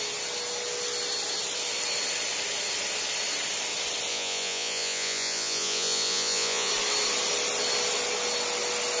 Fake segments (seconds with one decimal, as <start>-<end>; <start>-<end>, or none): 4.1-6.7